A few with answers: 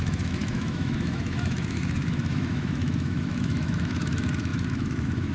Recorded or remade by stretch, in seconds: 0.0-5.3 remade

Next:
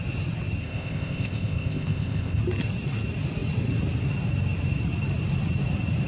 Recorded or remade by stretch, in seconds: 0.0-0.6 recorded; 0.6-2.4 remade; 2.4-6.1 recorded

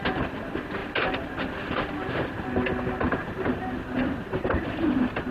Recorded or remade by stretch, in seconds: 0.0-5.3 recorded

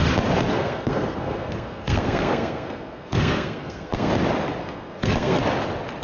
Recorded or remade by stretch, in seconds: 0.0-0.5 recorded; 0.5-4.1 remade; 4.1-4.6 recorded; 4.6-5.4 remade; 5.4-6.0 recorded

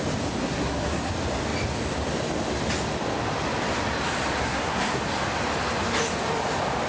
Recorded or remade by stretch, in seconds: 0.0-0.4 recorded; 0.4-1.1 remade; 1.1-4.4 recorded; 4.4-5.0 remade; 5.0-6.9 recorded

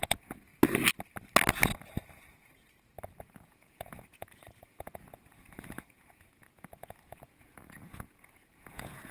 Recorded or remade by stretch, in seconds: 0.0-0.5 remade; 0.5-3.3 recorded; 3.3-9.1 remade

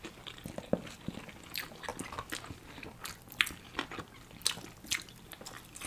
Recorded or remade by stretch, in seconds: 0.0-5.9 recorded